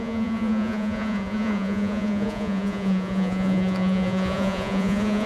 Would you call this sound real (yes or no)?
no